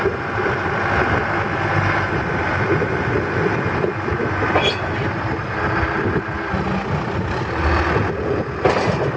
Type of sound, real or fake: real